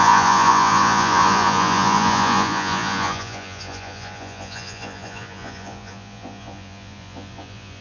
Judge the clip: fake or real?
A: fake